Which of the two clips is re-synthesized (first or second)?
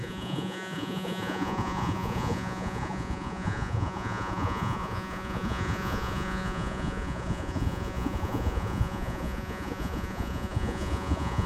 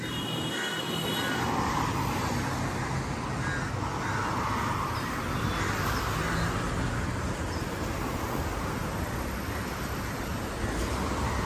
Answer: first